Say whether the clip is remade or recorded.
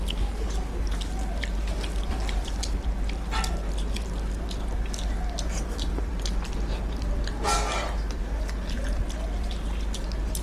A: recorded